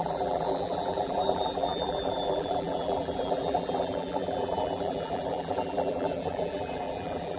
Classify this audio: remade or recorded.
remade